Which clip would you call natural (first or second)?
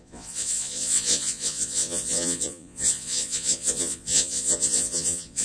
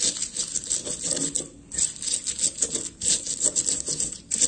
second